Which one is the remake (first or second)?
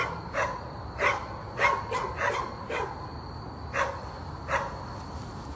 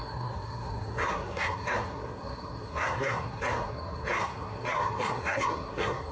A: second